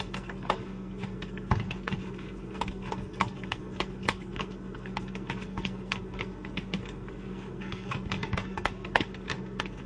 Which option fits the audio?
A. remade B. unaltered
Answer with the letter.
A